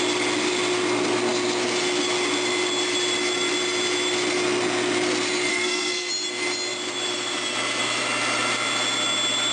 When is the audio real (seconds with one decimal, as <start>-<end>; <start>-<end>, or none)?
0.0-5.5; 6.1-9.5